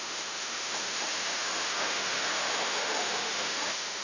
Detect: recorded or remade remade